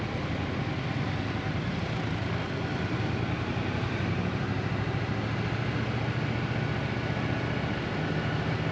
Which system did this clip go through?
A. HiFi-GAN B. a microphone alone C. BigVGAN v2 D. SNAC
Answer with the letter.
B